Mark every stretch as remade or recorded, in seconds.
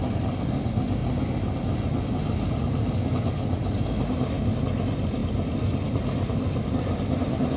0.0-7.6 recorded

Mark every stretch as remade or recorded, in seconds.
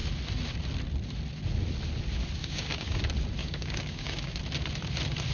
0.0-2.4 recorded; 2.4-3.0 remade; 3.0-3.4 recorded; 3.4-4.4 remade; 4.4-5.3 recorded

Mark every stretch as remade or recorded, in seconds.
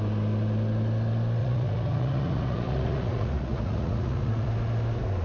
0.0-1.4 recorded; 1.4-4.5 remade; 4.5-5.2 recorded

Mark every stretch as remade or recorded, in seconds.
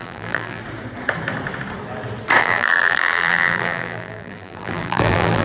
0.0-0.6 remade; 0.6-2.4 recorded; 2.4-5.4 remade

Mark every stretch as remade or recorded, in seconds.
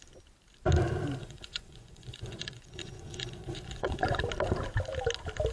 0.0-1.2 recorded; 1.2-4.2 remade; 4.2-5.5 recorded